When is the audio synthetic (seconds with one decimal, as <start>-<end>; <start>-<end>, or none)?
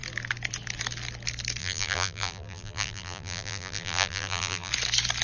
1.6-4.7